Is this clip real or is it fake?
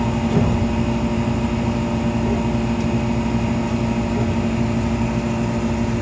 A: real